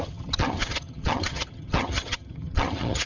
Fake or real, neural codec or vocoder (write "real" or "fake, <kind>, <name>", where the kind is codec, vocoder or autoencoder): fake, vocoder, HiFi-GAN